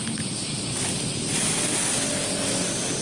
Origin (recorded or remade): recorded